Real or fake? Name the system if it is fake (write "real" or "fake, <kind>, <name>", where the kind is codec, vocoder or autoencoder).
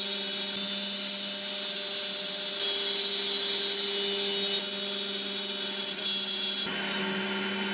real